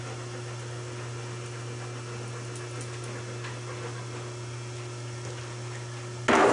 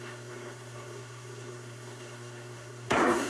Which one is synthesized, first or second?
second